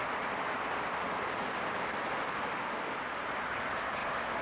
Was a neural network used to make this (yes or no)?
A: no